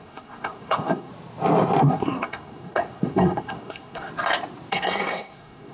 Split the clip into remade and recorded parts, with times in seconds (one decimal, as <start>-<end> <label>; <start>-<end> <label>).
0.0-1.1 remade; 1.1-1.8 recorded; 1.8-4.1 remade; 4.1-4.7 recorded; 4.7-5.7 remade